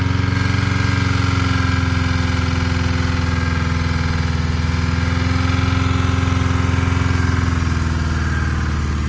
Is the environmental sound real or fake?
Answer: real